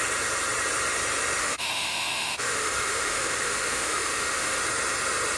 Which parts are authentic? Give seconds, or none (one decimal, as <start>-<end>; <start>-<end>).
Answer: 0.0-1.4; 4.6-5.4